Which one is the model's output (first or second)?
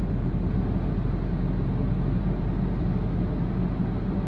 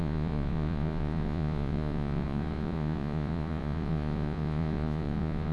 second